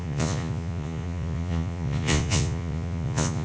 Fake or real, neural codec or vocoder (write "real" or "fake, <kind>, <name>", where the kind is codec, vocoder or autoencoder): fake, vocoder, Vocos